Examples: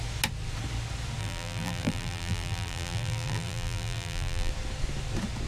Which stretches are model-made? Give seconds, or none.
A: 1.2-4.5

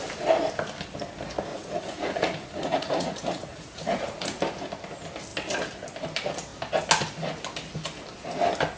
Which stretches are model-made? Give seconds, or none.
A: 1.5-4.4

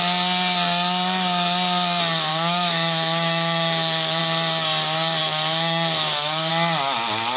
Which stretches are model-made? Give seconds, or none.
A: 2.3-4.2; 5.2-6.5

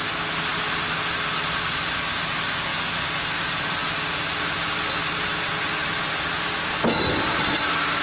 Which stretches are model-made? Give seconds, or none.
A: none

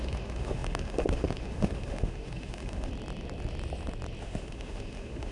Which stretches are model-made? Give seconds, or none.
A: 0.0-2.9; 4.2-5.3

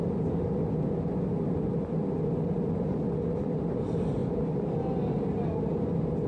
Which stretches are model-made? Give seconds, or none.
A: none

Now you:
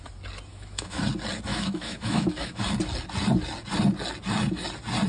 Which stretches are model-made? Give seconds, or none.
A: 0.5-1.0; 1.5-2.6